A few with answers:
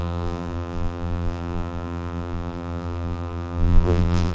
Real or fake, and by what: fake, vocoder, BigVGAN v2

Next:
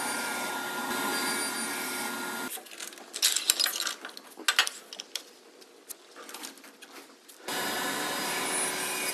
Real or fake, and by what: real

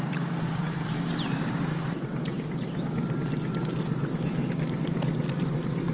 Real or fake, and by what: fake, vocoder, BigVGAN v2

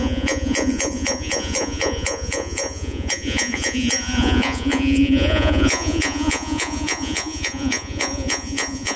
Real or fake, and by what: fake, vocoder, Vocos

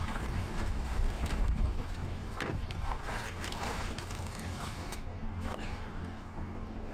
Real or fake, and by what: fake, codec, DAC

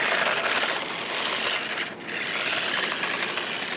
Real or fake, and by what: real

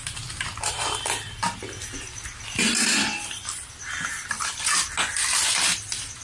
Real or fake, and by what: real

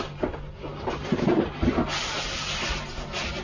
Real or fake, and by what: real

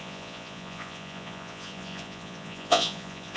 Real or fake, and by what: fake, vocoder, Vocos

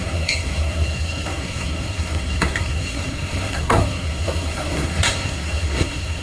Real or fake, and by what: fake, codec, SNAC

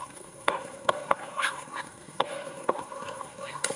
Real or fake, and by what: fake, codec, SNAC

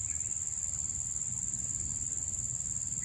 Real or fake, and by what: real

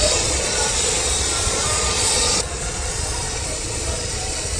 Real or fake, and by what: fake, vocoder, Vocos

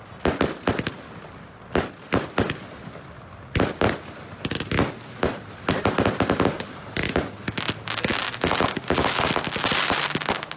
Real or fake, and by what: real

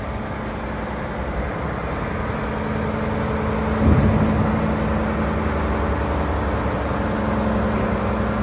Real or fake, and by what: real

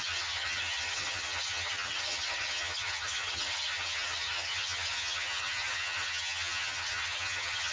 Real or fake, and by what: fake, vocoder, HiFi-GAN